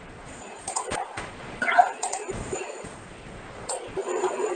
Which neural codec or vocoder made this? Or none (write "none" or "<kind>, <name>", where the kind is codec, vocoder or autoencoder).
vocoder, Vocos